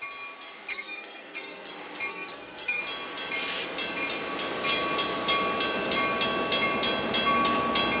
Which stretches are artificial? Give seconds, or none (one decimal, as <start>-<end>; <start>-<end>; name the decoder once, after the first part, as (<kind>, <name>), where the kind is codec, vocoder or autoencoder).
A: 0.7-1.7 (codec, SNAC); 2.1-2.8